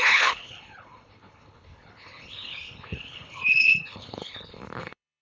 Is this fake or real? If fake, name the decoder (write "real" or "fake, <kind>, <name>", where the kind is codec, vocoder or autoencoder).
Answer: fake, codec, HILCodec